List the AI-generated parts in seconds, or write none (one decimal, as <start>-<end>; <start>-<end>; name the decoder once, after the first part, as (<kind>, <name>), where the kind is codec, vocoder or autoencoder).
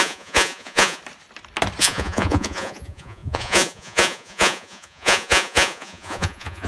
0.0-1.0 (vocoder, Vocos); 1.8-6.7